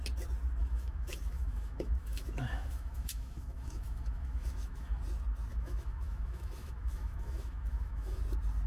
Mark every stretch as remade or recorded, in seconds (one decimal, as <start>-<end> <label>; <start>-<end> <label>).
0.0-0.6 recorded; 0.6-5.0 remade; 5.0-5.5 recorded; 5.5-8.2 remade; 8.2-8.7 recorded